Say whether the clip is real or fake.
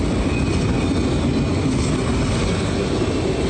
real